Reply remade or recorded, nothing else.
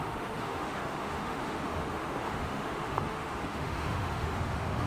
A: remade